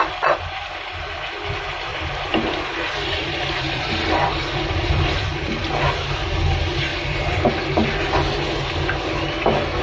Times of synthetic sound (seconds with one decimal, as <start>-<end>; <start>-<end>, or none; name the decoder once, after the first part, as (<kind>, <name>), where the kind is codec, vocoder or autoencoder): 1.9-5.9 (vocoder, BigVGAN v2); 6.9-7.5